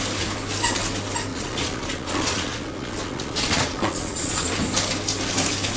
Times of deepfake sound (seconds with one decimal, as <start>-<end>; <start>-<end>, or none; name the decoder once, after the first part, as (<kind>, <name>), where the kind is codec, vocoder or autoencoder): 1.3-4.5 (vocoder, Vocos)